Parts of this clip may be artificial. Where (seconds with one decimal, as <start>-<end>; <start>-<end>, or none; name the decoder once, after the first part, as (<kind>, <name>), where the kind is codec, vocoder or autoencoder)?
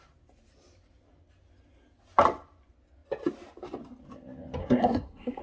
4.6-5.4 (codec, SNAC)